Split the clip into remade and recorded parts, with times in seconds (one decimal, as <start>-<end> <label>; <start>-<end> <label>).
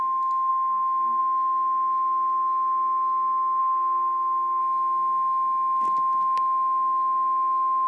0.0-0.5 recorded; 0.5-1.2 remade; 1.2-3.6 recorded; 3.6-4.6 remade; 4.6-7.9 recorded